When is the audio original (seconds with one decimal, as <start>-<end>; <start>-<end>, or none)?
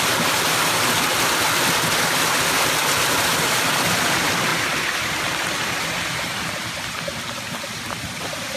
0.0-8.6